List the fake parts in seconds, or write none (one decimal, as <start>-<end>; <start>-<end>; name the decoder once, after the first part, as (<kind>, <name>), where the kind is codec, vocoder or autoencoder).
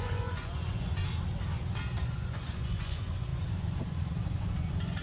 0.0-1.0 (vocoder, Vocos); 2.0-5.0